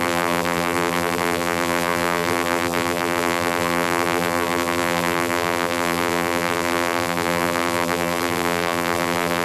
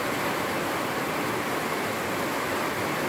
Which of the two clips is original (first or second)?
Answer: second